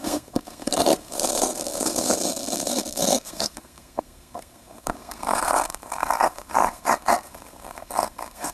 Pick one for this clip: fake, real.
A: fake